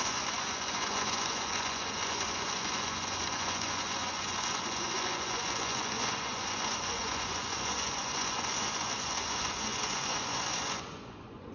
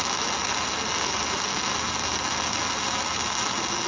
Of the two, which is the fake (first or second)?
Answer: first